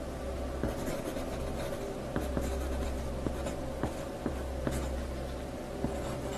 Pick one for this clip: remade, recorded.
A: recorded